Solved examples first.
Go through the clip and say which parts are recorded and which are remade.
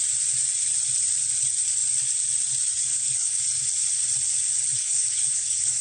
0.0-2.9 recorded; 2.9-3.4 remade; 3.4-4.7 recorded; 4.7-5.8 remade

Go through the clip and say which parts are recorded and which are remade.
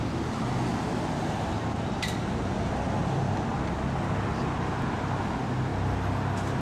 0.0-6.6 recorded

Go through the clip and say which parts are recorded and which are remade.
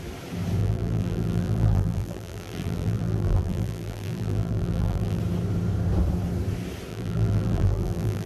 0.0-0.6 recorded; 0.6-5.2 remade; 5.2-6.9 recorded; 6.9-8.3 remade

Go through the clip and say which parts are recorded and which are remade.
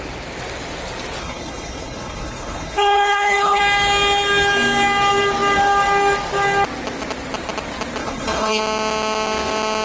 0.0-1.2 recorded; 1.2-3.6 remade; 3.6-8.0 recorded; 8.0-8.6 remade; 8.6-9.8 recorded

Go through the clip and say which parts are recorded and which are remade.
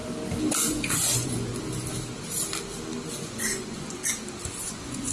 0.0-0.5 recorded; 0.5-1.5 remade; 1.5-3.1 recorded; 3.1-4.0 remade; 4.0-4.5 recorded; 4.5-5.1 remade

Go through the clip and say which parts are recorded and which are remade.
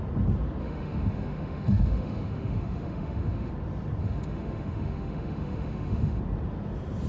0.0-0.6 recorded; 0.6-3.5 remade; 3.5-4.0 recorded; 4.0-6.2 remade; 6.2-7.1 recorded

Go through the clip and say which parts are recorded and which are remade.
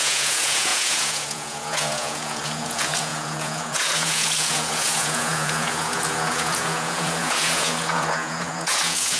0.0-9.2 remade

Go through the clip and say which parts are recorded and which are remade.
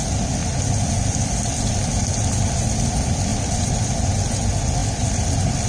0.0-3.3 recorded; 3.3-3.8 remade; 3.8-4.8 recorded; 4.8-5.7 remade